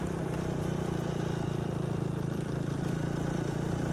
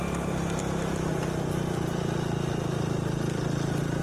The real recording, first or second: second